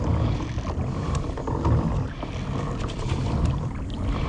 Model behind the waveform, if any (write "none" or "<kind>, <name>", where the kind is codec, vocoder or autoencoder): none